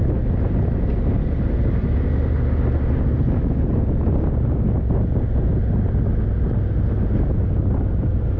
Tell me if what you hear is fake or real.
real